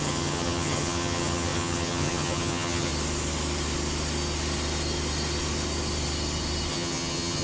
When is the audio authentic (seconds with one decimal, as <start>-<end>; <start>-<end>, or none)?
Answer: 2.9-6.7